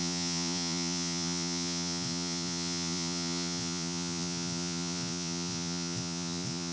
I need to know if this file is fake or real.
fake